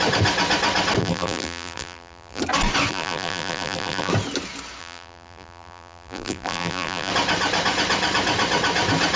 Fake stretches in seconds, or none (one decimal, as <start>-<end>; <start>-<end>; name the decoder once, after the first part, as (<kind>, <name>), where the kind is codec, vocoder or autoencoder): 1.0-2.4 (vocoder, BigVGAN v2); 2.9-4.1; 4.8-7.1